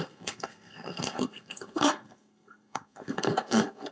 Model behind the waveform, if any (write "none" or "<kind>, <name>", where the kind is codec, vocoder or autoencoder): codec, SNAC